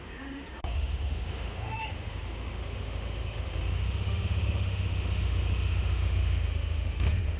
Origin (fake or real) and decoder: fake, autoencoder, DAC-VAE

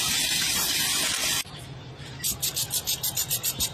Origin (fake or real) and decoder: real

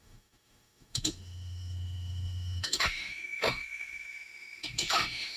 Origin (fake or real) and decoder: fake, autoencoder, DAC-VAE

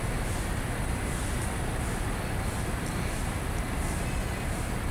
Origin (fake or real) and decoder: real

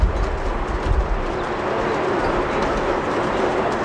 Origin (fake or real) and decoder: real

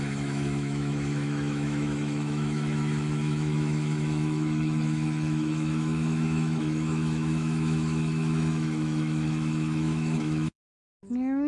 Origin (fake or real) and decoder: fake, autoencoder, DAC-VAE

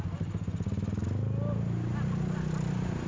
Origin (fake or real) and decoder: real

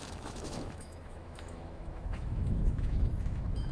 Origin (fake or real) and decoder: fake, autoencoder, DAC-VAE